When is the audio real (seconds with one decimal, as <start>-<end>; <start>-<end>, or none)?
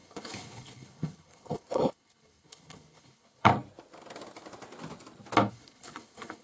3.5-5.5